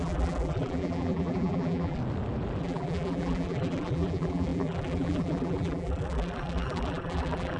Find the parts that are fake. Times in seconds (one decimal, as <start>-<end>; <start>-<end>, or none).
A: 0.0-2.0; 2.6-7.6

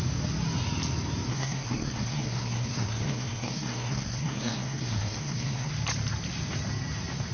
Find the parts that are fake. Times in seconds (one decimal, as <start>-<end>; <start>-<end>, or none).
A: 1.3-5.7

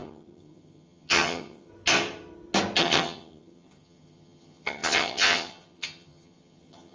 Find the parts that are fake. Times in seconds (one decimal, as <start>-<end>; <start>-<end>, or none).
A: 0.0-1.7; 2.8-6.9